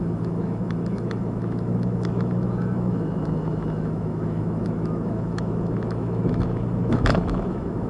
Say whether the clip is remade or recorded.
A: remade